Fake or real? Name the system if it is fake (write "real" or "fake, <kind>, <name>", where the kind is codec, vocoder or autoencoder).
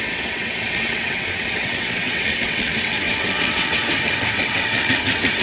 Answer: fake, vocoder, WaveNeXt